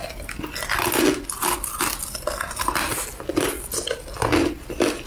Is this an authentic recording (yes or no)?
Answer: yes